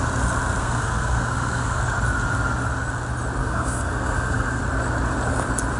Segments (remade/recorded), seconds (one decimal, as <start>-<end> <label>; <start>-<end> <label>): 0.0-0.6 recorded; 0.6-1.8 remade; 1.8-3.4 recorded; 3.4-4.6 remade; 4.6-5.8 recorded